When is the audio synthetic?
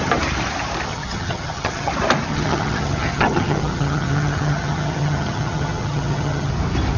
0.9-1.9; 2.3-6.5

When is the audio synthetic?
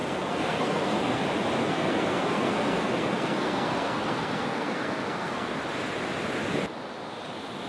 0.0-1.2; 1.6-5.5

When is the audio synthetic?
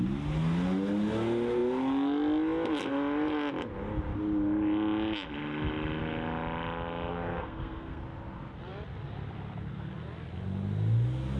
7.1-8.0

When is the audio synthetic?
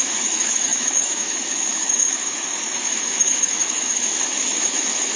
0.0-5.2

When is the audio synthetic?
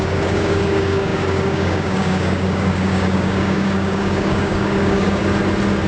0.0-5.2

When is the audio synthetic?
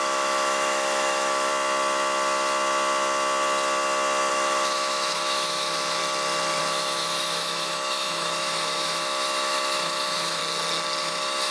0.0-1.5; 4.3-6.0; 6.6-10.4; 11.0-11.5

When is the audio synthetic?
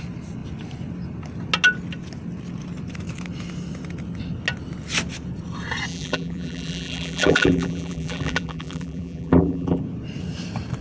5.9-9.8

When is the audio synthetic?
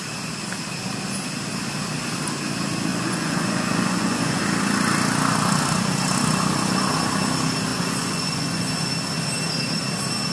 2.9-4.4; 7.7-8.9